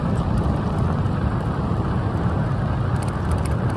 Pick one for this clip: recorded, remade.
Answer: recorded